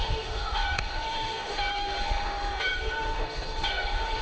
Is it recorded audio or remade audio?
remade